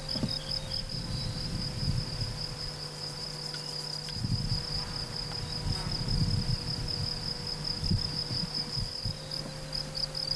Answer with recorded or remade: recorded